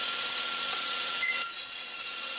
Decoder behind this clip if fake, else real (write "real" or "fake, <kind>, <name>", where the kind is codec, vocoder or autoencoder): fake, vocoder, WaveNeXt